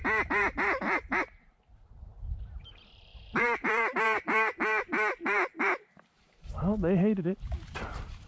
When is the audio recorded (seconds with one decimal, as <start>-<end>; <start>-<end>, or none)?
none